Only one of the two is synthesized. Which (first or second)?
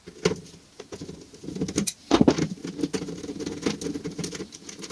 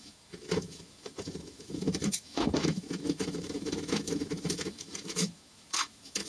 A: second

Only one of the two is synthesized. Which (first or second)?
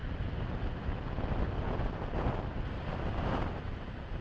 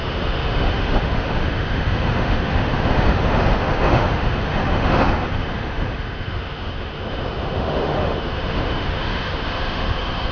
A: second